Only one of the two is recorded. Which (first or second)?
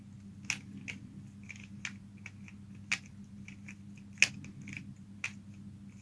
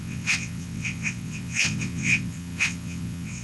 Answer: first